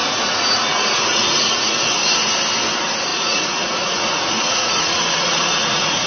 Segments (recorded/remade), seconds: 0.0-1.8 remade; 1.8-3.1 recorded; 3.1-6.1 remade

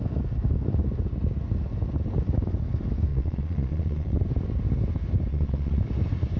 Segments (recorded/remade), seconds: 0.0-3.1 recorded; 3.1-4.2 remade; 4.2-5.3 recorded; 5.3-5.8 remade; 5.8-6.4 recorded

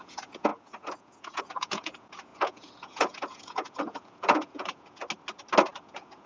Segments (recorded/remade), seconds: 0.0-5.0 remade; 5.0-5.8 recorded; 5.8-6.3 remade